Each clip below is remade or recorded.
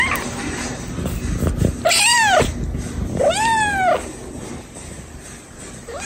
recorded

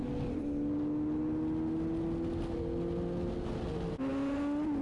recorded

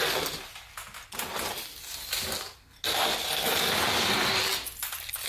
recorded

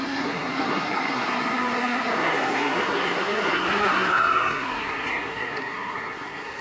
remade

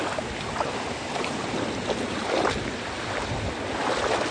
recorded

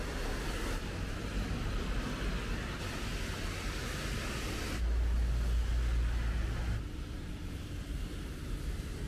recorded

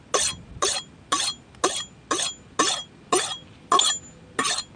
recorded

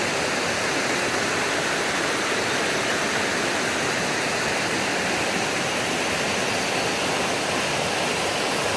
recorded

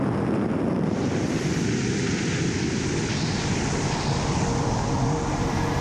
remade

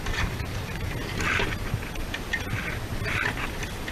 recorded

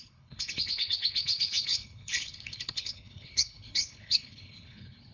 remade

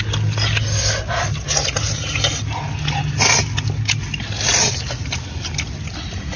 recorded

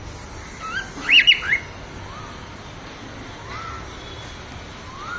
recorded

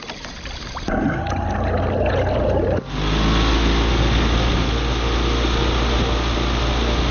recorded